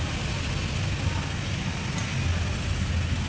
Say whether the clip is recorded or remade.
recorded